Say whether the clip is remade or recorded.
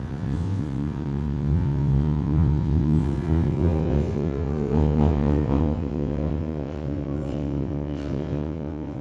remade